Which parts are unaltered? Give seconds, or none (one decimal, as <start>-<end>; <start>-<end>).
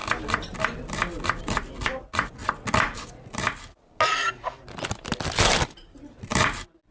0.0-6.9